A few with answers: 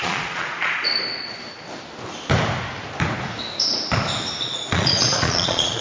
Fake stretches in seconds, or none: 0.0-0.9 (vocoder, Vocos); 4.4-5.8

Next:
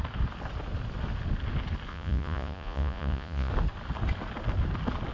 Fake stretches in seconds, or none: 1.9-3.5 (vocoder, Vocos)

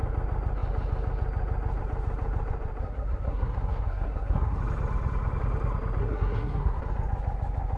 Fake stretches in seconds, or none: 2.8-4.6 (codec, SNAC); 6.0-6.8

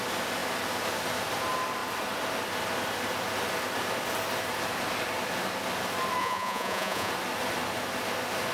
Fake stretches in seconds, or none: 6.2-7.1 (vocoder, Vocos)